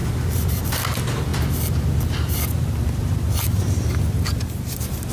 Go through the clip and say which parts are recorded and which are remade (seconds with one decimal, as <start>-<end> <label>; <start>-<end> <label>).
0.0-5.1 recorded